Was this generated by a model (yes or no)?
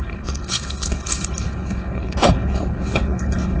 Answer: yes